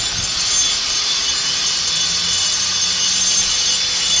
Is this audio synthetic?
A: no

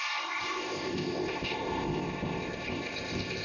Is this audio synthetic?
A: yes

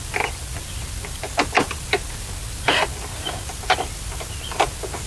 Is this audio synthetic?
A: no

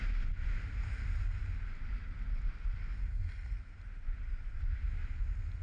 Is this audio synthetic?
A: no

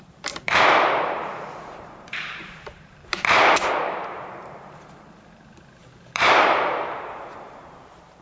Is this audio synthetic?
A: yes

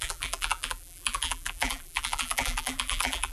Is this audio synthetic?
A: yes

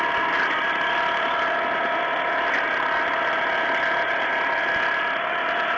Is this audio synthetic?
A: no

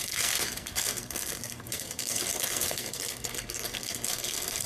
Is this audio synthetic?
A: yes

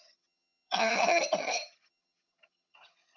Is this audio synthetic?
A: yes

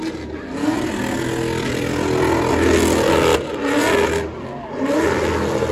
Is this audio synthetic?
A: no